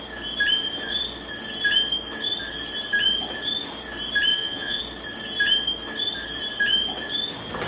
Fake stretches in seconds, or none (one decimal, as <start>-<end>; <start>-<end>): 4.3-4.8

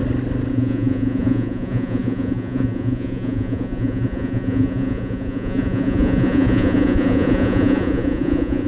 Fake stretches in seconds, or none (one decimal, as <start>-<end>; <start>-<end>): 0.5-8.7

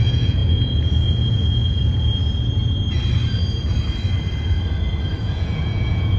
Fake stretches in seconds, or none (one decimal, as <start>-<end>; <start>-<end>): 0.0-2.2; 5.2-6.2